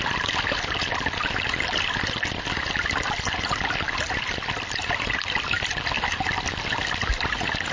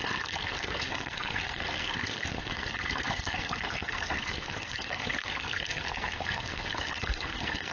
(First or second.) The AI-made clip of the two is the second